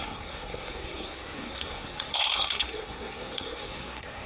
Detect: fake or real fake